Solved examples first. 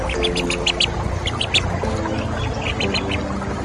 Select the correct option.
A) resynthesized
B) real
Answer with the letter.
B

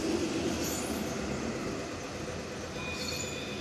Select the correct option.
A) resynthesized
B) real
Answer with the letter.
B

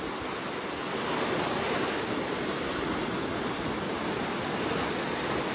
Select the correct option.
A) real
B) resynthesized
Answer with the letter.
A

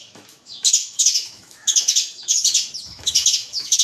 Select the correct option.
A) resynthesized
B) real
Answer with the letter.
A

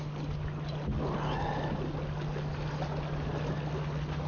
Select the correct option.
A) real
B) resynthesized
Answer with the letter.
A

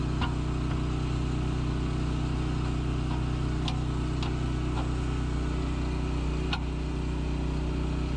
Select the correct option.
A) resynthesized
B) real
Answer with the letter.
B